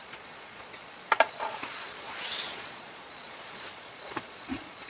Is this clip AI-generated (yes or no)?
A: yes